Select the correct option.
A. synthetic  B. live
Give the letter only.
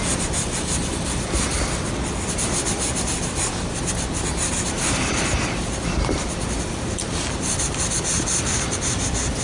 B